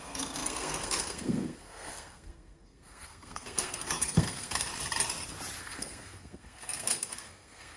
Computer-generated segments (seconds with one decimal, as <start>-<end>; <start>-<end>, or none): 0.0-4.7; 5.6-7.8